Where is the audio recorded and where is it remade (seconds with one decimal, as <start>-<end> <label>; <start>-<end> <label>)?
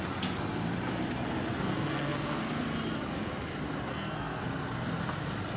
0.0-1.5 recorded; 1.5-2.4 remade; 2.4-3.9 recorded; 3.9-4.4 remade; 4.4-5.6 recorded